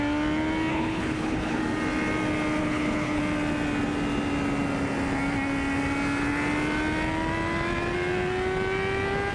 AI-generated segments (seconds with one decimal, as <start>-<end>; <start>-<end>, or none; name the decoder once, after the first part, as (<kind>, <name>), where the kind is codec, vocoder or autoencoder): 0.7-1.6 (codec, HILCodec); 2.6-3.2